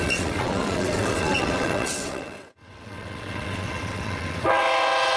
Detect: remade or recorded remade